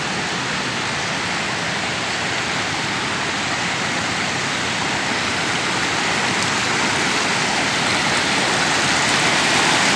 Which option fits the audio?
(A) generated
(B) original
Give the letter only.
B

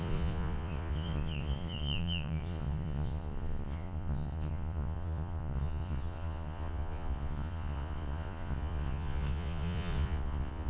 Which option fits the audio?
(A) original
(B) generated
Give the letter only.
B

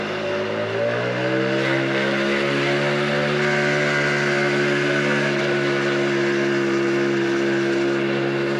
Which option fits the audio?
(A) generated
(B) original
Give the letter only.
B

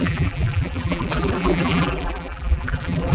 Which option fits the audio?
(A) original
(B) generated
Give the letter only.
B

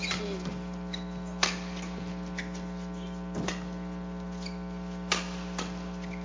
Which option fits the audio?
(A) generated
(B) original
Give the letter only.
B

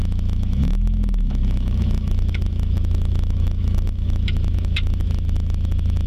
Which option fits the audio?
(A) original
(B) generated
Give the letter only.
B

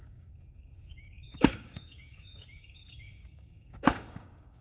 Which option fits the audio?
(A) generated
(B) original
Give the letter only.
A